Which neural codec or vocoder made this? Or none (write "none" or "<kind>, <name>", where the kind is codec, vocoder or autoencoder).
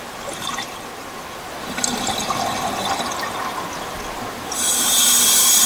none